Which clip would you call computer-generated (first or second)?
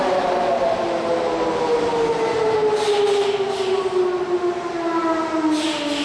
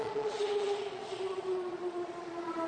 second